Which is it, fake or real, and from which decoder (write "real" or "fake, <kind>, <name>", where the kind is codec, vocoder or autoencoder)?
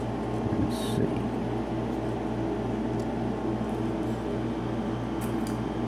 real